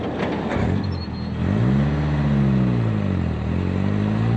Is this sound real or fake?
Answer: real